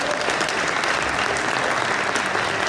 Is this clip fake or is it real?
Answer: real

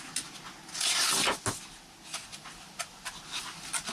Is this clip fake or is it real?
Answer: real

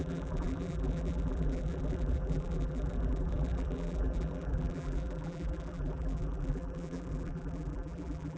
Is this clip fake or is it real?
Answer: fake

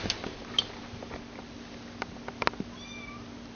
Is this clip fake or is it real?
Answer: real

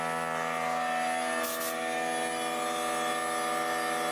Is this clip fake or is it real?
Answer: real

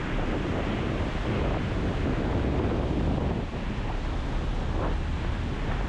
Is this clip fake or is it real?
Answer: real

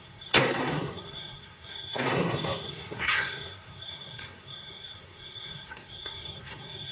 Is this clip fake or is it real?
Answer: fake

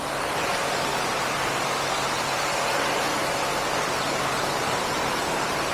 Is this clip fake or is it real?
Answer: fake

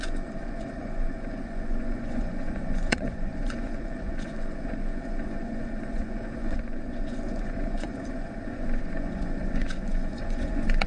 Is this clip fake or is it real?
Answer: fake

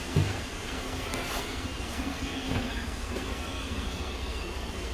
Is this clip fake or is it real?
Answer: fake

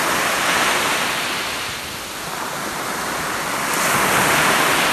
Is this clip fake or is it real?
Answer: real